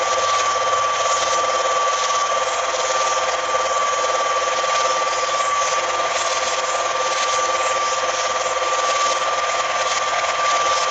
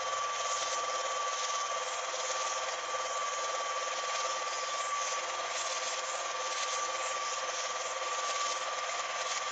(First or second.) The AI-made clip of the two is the second